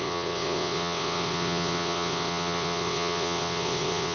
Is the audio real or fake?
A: fake